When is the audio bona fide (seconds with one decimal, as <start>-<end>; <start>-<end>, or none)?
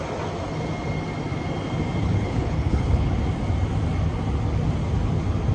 0.0-2.0; 3.1-5.5